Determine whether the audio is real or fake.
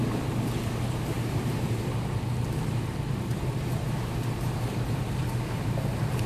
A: fake